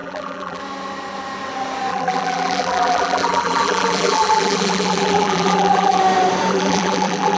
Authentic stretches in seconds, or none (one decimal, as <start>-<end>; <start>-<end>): 0.6-1.9; 6.0-6.5